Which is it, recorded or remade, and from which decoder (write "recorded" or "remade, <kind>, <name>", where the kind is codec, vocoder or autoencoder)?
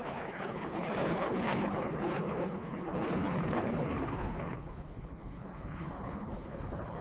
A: remade, codec, HILCodec